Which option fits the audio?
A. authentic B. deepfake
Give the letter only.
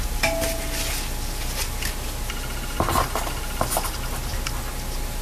A